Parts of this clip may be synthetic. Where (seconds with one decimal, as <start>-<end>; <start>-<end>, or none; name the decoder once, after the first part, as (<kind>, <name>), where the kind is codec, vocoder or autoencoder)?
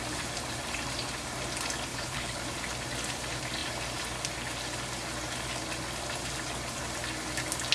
1.9-2.4 (codec, HILCodec)